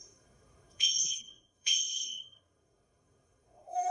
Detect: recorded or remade remade